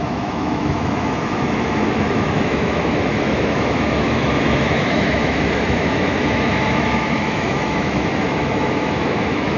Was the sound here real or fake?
fake